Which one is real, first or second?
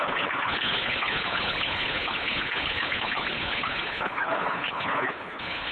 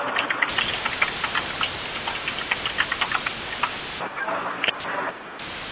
second